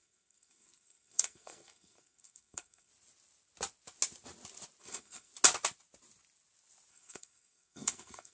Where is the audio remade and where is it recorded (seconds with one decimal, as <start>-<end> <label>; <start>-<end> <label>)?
0.0-2.9 remade; 2.9-4.8 recorded; 4.8-5.3 remade; 5.3-6.9 recorded; 6.9-8.3 remade